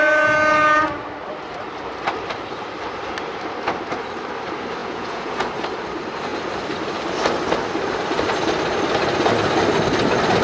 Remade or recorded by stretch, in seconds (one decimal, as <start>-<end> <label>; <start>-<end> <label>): 0.0-4.8 recorded; 4.8-5.5 remade; 5.5-10.4 recorded